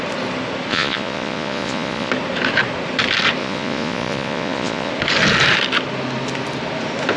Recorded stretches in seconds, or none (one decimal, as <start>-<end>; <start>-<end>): 0.0-0.7; 2.1-3.4; 4.9-7.2